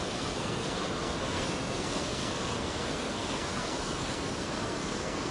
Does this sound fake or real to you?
fake